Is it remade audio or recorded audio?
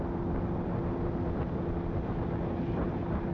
recorded